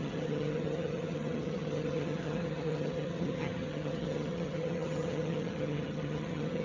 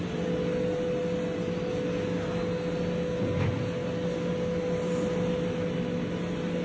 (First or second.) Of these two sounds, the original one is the second